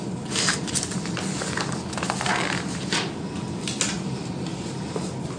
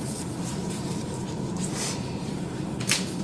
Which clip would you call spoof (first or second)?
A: second